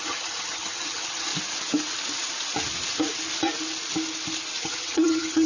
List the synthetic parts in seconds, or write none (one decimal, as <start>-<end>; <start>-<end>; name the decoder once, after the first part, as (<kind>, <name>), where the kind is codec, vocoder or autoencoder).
0.0-1.3 (vocoder, HiFi-GAN); 4.6-5.5